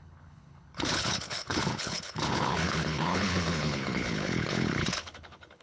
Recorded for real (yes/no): no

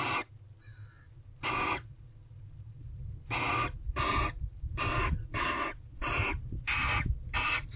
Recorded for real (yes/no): yes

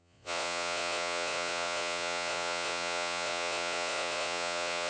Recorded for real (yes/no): no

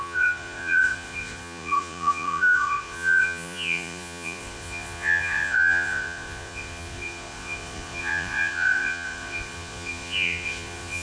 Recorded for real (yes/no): no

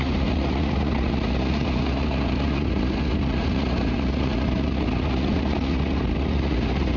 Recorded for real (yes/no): no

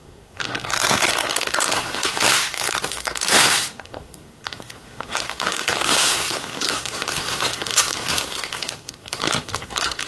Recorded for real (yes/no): no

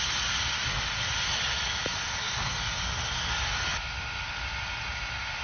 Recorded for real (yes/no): yes